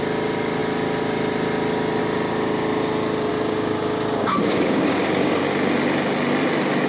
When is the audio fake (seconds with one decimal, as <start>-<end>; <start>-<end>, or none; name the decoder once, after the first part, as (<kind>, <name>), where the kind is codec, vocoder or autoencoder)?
3.3-5.4 (codec, DAC)